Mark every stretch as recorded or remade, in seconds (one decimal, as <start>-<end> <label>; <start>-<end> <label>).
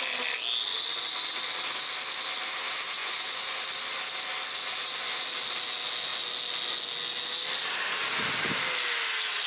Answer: 0.0-3.0 recorded; 3.0-3.6 remade; 3.6-9.5 recorded